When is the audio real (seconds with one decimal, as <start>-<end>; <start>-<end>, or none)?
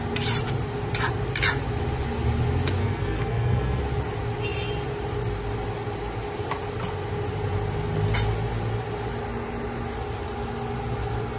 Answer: 0.0-2.8; 3.8-11.4